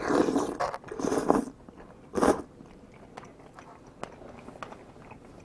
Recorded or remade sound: recorded